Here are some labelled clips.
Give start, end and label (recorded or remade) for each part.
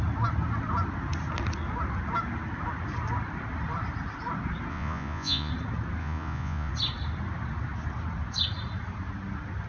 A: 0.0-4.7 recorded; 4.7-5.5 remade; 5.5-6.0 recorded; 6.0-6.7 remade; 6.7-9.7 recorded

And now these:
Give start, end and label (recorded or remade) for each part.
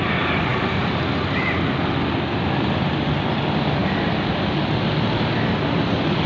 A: 0.0-6.3 recorded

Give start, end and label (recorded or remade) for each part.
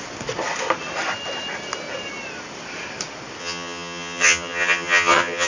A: 0.0-3.4 recorded; 3.4-5.5 remade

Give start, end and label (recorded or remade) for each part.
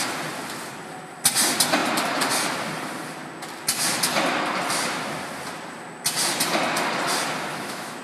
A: 0.0-7.5 recorded; 7.5-8.0 remade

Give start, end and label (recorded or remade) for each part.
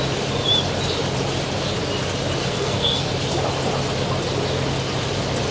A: 0.0-2.4 recorded; 2.4-3.1 remade; 3.1-5.5 recorded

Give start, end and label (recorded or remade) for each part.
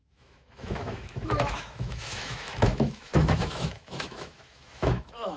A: 0.0-5.4 remade